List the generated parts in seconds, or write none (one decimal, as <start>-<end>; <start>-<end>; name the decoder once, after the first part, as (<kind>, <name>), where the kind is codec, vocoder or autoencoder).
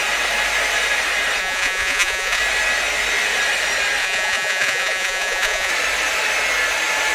1.4-2.4 (vocoder, Vocos); 4.0-5.7